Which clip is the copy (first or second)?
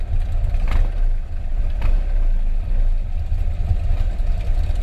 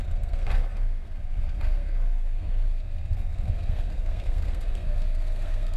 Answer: second